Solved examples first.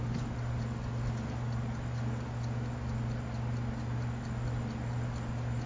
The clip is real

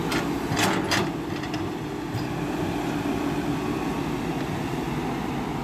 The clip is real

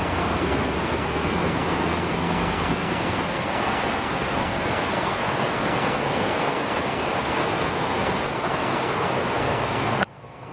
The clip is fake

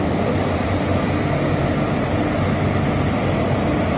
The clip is real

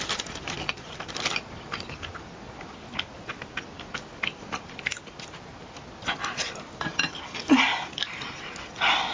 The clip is real